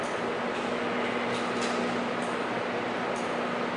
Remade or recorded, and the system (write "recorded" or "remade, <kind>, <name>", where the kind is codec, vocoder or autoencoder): recorded